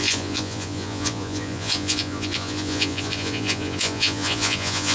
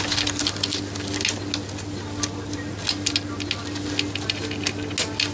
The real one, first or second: second